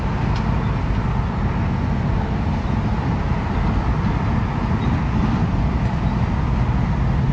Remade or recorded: recorded